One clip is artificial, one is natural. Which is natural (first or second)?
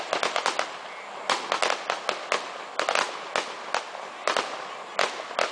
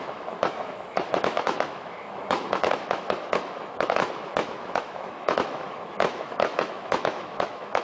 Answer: first